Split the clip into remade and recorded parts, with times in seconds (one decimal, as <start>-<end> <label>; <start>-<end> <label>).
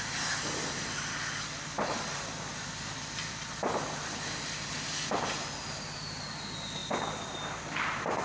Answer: 0.0-8.2 recorded